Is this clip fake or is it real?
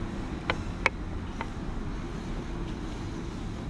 real